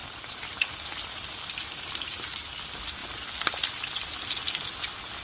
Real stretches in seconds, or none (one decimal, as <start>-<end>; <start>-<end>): 2.5-5.2